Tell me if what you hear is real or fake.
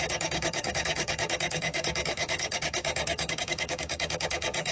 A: fake